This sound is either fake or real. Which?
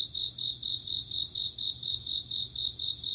real